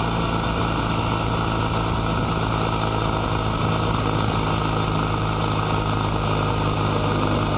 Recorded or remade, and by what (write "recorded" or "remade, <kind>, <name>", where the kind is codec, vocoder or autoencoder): recorded